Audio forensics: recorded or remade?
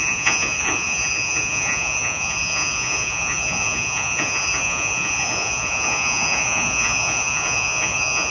remade